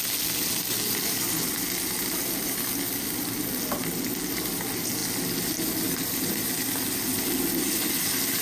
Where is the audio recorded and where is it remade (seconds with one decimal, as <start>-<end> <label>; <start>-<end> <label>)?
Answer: 0.0-8.4 recorded